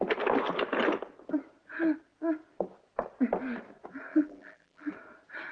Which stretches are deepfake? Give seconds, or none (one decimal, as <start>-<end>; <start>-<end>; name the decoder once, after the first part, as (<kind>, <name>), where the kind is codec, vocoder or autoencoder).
4.1-4.9 (vocoder, BigVGAN v2)